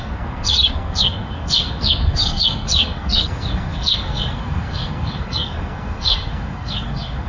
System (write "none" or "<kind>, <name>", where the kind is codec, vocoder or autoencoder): codec, SNAC